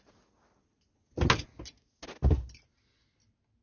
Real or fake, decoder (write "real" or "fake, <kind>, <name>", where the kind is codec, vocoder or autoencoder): real